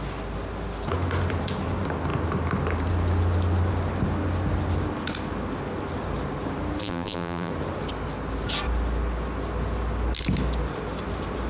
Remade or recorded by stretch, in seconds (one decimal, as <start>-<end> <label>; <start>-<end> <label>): 0.0-6.8 recorded; 6.8-7.5 remade; 7.5-11.5 recorded